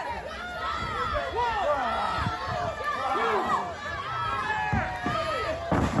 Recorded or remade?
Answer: recorded